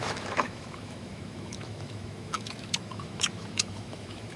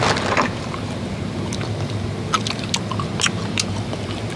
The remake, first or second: first